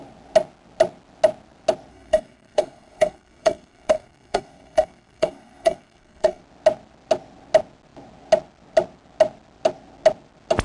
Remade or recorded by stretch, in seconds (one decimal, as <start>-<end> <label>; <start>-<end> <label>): 0.0-1.9 recorded; 1.9-6.4 remade; 6.4-10.6 recorded